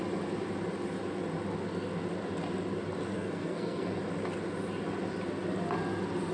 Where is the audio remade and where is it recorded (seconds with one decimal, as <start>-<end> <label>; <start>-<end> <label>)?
0.0-3.1 recorded; 3.1-4.0 remade; 4.0-6.3 recorded